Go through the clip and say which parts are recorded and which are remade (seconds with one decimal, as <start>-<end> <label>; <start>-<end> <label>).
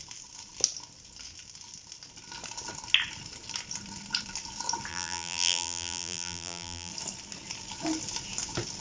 0.0-4.9 recorded; 4.9-6.9 remade; 6.9-8.8 recorded